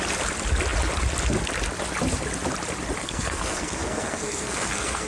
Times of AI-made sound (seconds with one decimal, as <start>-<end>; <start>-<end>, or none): 3.0-5.1